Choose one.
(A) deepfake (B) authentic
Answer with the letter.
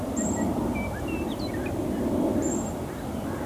B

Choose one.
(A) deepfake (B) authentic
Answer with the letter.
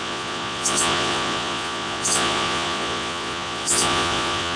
A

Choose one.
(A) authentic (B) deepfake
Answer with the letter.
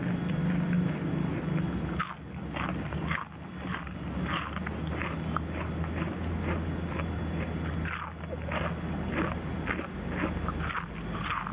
A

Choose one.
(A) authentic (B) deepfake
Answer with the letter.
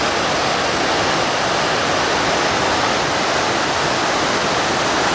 A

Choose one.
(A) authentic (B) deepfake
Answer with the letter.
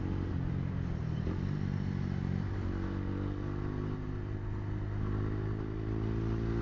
A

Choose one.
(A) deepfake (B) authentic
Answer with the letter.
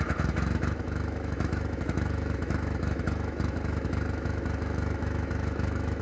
A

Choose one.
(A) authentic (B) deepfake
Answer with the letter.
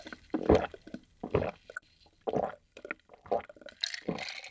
A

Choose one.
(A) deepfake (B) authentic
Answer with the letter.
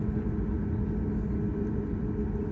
B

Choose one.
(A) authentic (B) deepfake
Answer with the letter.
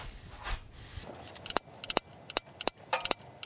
A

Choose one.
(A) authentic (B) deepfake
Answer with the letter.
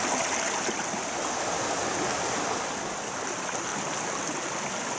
A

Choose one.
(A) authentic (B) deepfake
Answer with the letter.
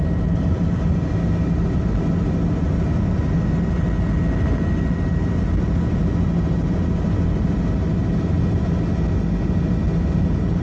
A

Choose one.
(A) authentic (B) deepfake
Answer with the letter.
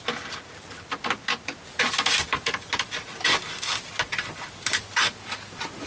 A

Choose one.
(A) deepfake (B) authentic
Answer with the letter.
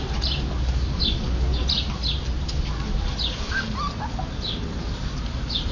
B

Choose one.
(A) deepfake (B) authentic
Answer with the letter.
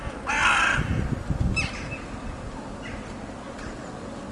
B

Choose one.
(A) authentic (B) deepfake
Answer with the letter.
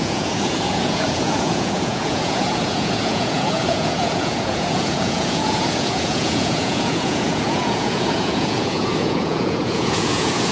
B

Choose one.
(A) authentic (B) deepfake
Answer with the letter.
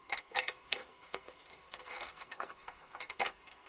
B